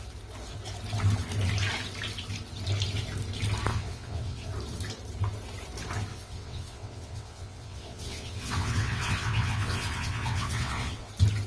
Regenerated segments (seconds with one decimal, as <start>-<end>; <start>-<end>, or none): 3.7-4.5; 6.1-11.1